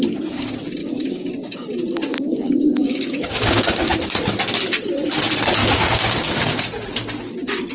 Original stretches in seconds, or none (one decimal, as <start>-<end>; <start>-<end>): 0.0-0.8; 1.3-2.1; 3.9-5.6; 6.6-7.7